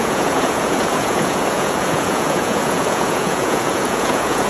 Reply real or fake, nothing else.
fake